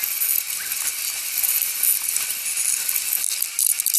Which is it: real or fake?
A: real